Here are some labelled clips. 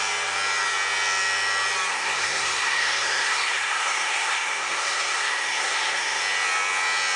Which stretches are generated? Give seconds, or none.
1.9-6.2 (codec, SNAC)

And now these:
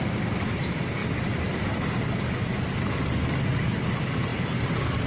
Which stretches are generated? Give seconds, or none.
none

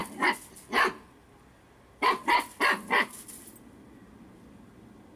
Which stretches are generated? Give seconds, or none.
none